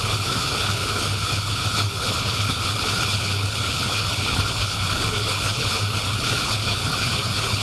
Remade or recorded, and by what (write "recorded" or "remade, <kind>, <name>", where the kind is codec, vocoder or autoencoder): remade, codec, HILCodec